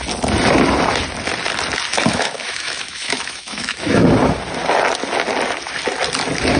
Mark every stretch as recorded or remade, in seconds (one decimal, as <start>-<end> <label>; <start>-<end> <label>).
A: 0.0-2.1 recorded; 2.1-4.1 remade; 4.1-6.6 recorded

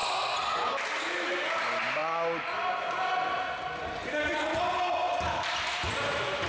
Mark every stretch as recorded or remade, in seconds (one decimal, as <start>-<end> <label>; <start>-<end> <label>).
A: 0.0-6.5 recorded

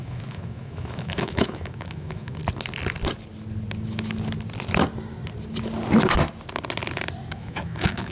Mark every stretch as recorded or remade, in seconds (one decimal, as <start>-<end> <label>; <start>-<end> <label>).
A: 0.0-2.4 remade; 2.4-7.3 recorded; 7.3-8.1 remade

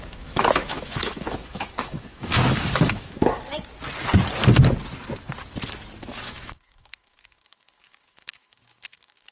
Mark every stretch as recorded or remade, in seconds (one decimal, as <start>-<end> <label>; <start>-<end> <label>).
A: 0.0-2.3 remade; 2.3-2.8 recorded; 2.8-3.2 remade; 3.2-6.0 recorded; 6.0-9.3 remade

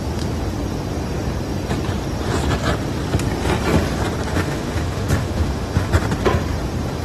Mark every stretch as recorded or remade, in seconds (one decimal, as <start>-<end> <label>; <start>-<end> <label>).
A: 0.0-4.3 recorded; 4.3-5.9 remade; 5.9-7.0 recorded

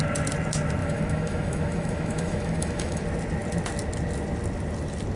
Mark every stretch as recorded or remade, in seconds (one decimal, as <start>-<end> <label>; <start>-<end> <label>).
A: 0.0-0.8 recorded; 0.8-3.0 remade; 3.0-5.2 recorded